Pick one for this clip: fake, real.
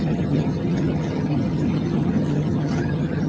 fake